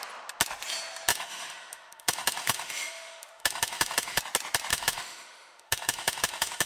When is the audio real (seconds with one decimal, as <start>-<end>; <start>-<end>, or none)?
0.0-1.1; 4.2-4.7